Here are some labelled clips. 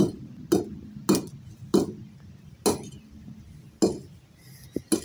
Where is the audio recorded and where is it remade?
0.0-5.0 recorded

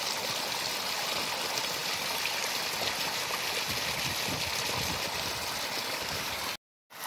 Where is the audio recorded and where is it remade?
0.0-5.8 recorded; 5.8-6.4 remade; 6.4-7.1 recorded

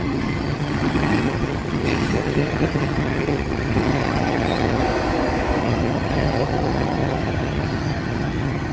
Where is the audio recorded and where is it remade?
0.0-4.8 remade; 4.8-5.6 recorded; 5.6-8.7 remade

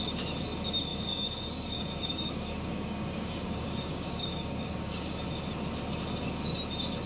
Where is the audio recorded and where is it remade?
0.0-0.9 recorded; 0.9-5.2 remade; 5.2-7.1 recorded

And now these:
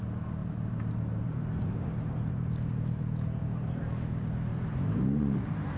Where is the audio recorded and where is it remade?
0.0-0.4 recorded; 0.4-3.0 remade; 3.0-3.4 recorded; 3.4-3.9 remade; 3.9-4.5 recorded; 4.5-5.8 remade